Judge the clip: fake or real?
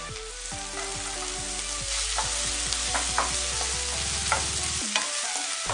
real